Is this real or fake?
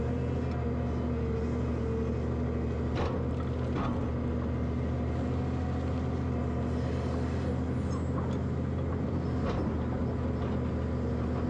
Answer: real